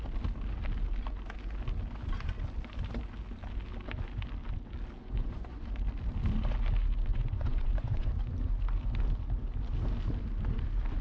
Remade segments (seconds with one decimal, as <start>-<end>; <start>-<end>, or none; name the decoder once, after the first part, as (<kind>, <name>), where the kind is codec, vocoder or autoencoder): 5.0-5.6 (vocoder, Vocos); 7.1-8.1